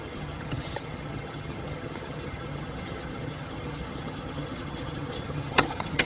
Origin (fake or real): fake